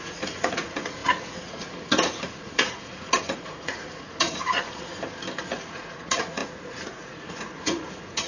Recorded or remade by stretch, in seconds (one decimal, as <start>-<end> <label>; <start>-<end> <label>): 0.0-4.9 remade; 4.9-5.5 recorded; 5.5-8.3 remade